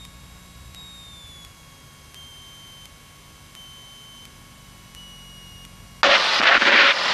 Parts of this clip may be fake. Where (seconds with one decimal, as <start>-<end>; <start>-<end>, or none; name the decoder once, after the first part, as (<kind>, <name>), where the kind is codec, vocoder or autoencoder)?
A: none